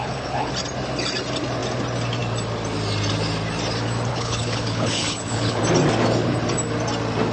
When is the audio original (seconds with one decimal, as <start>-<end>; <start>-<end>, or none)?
0.5-4.1; 5.6-7.3